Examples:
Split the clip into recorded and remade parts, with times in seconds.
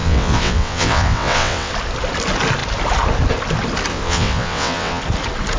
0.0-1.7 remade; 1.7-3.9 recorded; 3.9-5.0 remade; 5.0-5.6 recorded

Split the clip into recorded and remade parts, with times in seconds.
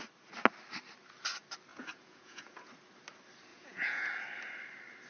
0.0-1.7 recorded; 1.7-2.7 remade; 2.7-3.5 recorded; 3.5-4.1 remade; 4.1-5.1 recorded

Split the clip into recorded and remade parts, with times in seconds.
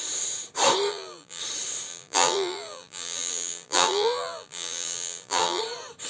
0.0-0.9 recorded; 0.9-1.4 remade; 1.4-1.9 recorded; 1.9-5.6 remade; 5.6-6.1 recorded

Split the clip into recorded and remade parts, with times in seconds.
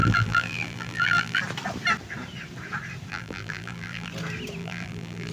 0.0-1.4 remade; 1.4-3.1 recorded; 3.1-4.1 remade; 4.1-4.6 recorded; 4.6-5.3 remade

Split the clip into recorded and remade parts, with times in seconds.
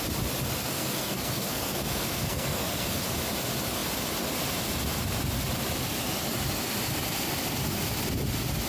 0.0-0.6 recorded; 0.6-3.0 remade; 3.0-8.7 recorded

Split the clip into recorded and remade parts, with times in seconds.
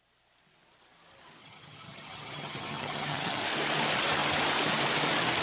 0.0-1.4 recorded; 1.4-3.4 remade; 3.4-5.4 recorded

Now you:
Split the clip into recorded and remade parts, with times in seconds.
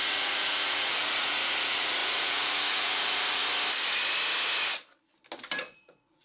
0.0-3.4 remade; 3.4-5.7 recorded; 5.7-6.2 remade